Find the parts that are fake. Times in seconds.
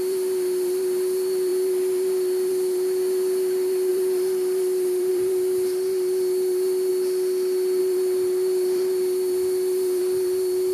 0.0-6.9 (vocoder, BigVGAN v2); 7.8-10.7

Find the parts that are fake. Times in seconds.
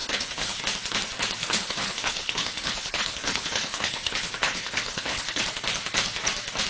0.0-0.6 (codec, HILCodec); 1.4-5.4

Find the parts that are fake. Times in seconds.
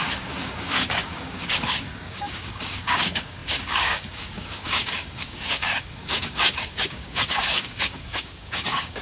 0.0-9.0 (codec, DAC)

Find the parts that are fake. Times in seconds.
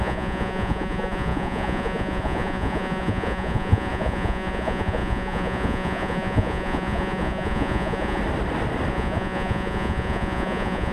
0.0-8.2 (vocoder, Vocos); 8.9-10.9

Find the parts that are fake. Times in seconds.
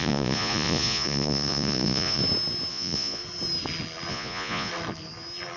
0.0-2.2 (vocoder, Vocos); 2.7-3.2; 4.1-4.7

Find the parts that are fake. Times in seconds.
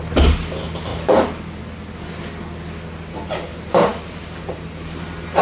0.9-1.6 (vocoder, BigVGAN v2); 3.9-5.4